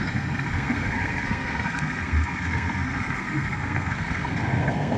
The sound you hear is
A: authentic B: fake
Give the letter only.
B